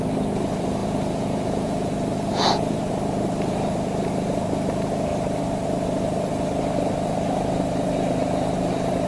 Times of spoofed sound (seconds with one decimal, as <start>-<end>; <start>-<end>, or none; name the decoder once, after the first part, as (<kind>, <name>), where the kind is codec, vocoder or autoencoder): 0.8-1.9 (vocoder, Vocos); 2.3-2.9